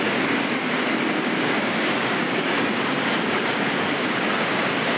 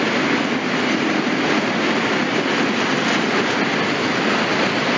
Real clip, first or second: second